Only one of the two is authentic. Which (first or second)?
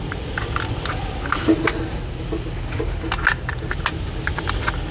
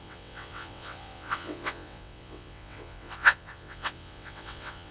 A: first